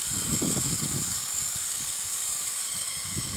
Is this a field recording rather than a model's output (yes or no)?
no